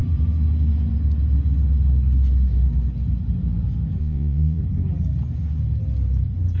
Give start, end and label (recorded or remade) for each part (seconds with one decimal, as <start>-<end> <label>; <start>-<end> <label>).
0.0-4.0 recorded; 4.0-4.6 remade; 4.6-6.6 recorded